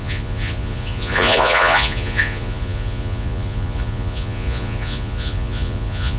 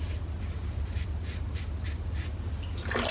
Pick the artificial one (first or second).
first